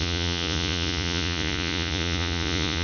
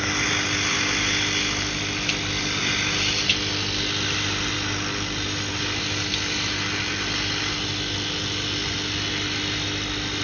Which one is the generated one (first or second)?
first